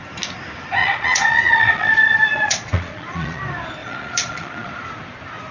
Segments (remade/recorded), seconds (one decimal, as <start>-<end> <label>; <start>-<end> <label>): 0.0-0.8 recorded; 0.8-3.4 remade; 3.4-3.8 recorded; 3.8-4.7 remade; 4.7-5.5 recorded